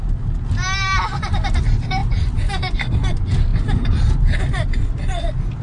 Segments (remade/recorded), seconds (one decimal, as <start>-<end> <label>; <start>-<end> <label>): 0.0-5.6 recorded